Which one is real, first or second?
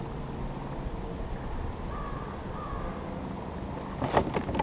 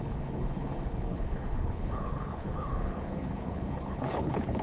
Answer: first